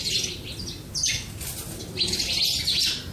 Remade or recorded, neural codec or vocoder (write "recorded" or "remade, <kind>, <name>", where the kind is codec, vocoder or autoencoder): recorded